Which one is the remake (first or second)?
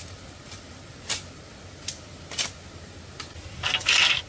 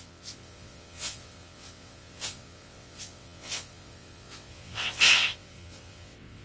second